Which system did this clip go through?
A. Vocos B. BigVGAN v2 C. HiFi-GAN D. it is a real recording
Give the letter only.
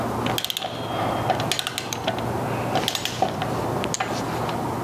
D